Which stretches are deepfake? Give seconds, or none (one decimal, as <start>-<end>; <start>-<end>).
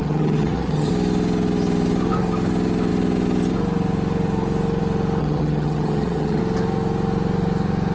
0.0-0.9; 5.2-6.4